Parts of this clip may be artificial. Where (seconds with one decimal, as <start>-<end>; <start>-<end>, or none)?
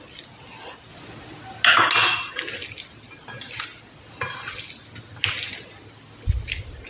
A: none